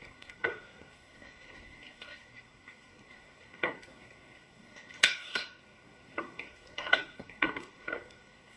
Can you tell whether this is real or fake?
fake